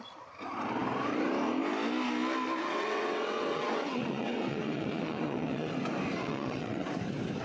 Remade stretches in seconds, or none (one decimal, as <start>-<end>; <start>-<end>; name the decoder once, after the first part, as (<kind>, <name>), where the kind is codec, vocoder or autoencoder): 2.6-5.7 (vocoder, WaveNeXt); 6.2-6.9